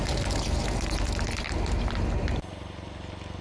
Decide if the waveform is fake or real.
real